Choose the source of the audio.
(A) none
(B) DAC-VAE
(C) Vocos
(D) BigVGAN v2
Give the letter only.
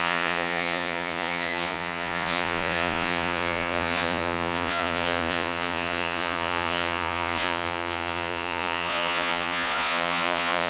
C